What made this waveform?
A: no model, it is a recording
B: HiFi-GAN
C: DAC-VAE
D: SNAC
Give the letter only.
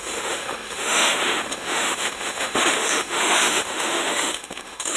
C